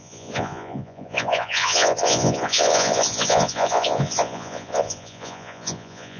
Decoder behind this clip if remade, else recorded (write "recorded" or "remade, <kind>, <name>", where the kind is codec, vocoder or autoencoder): remade, vocoder, Vocos